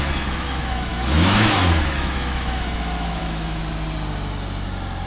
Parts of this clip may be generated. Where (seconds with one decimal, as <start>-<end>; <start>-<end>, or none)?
0.0-3.6